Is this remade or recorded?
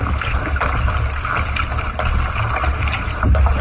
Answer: recorded